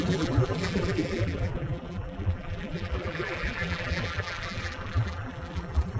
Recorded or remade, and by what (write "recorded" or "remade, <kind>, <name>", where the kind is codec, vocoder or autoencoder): remade, vocoder, BigVGAN v2